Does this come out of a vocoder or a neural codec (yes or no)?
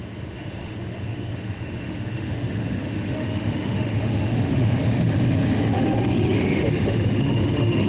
yes